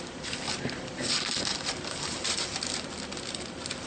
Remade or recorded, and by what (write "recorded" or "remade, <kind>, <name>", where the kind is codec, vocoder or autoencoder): recorded